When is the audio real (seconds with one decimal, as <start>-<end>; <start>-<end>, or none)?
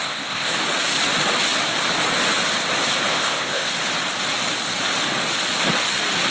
0.5-3.1; 3.7-6.3